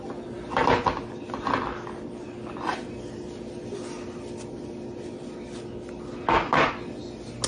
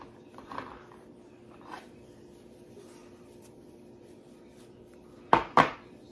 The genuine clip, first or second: first